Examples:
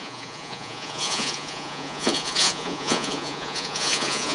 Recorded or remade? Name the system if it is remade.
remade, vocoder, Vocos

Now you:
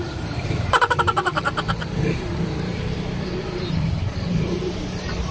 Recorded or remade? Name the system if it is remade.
remade, vocoder, BigVGAN v2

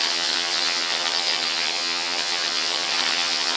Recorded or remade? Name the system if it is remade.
remade, vocoder, HiFi-GAN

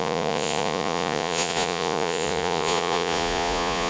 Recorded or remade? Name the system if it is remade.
remade, vocoder, Vocos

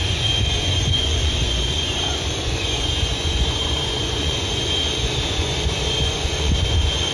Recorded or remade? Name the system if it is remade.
remade, vocoder, Vocos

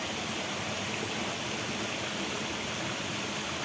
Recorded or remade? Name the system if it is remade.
recorded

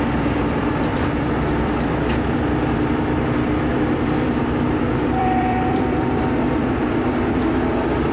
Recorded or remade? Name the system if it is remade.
remade, vocoder, BigVGAN v2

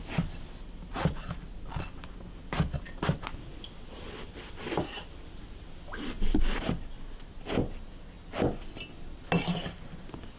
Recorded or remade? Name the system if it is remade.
recorded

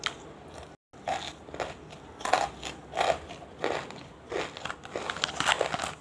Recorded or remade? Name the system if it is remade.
recorded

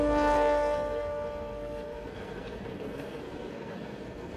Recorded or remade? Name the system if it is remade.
remade, codec, SNAC